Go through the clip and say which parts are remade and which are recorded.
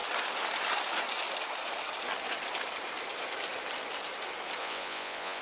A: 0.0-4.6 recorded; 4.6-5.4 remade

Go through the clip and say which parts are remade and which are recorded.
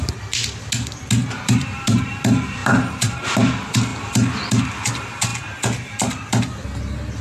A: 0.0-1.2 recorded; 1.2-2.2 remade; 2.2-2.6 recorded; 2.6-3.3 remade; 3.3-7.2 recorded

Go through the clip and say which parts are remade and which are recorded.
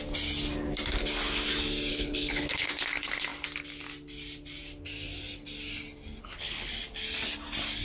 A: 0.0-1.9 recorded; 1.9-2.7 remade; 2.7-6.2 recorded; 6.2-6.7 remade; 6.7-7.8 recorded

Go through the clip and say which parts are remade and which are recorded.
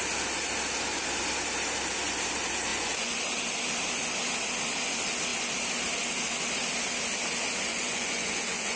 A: 0.0-2.7 recorded; 2.7-3.2 remade; 3.2-7.7 recorded; 7.7-8.8 remade